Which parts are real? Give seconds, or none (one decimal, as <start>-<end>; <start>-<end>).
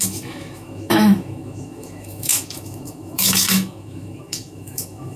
none